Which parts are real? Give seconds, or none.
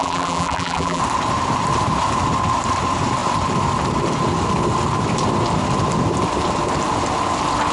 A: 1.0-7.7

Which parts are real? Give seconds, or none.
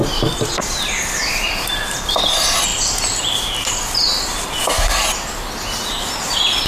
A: 2.2-2.7; 3.2-6.7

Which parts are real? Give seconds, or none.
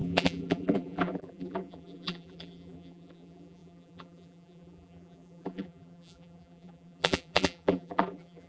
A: none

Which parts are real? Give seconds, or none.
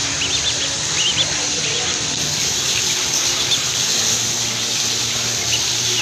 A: 0.0-6.0